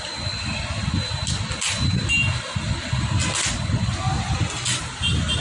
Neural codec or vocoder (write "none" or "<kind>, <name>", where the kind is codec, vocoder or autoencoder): none